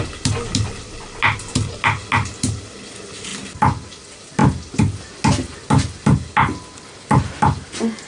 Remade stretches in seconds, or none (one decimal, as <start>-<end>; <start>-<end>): none